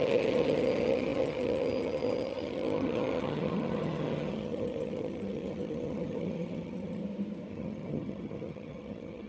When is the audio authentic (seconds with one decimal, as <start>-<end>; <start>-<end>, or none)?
7.0-7.5

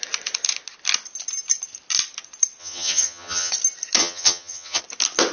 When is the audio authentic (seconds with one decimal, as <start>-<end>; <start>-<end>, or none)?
0.0-2.6; 3.5-4.0; 4.8-5.3